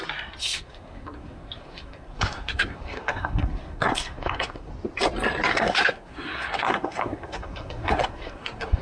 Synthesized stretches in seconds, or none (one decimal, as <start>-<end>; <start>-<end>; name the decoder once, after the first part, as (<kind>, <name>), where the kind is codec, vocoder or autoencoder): 0.4-4.7 (codec, SNAC); 5.5-8.8